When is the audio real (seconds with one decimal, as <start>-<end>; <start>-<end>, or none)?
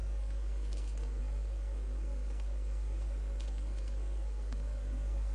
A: none